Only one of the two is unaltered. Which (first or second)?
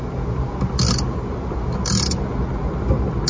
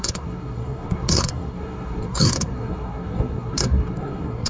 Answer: first